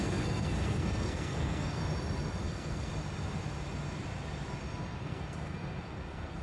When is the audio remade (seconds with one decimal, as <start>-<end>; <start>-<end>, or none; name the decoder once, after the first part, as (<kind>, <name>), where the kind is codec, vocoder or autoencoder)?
0.0-1.8 (codec, SNAC); 2.4-2.9; 5.0-6.4